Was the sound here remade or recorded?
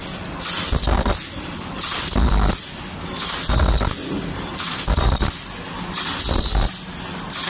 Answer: recorded